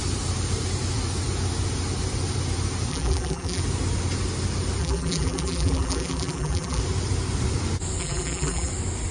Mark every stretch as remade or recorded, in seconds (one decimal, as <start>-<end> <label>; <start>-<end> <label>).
0.0-2.9 recorded; 2.9-3.6 remade; 3.6-4.8 recorded; 4.8-6.8 remade; 6.8-8.0 recorded; 8.0-8.7 remade; 8.7-9.1 recorded